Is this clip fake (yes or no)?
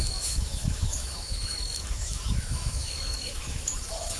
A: yes